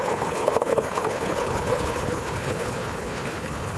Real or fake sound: fake